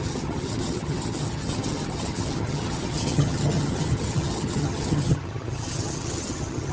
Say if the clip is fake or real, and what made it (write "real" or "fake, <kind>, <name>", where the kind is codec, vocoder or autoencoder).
fake, vocoder, HiFi-GAN